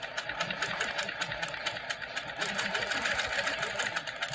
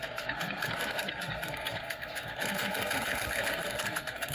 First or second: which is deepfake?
second